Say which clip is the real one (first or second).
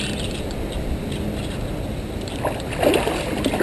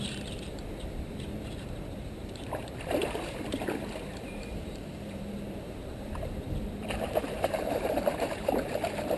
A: first